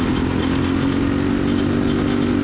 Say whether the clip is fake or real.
real